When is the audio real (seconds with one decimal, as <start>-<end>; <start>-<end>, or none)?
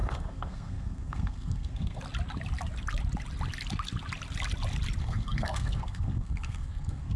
2.0-5.0